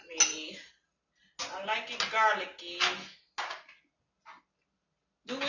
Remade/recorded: recorded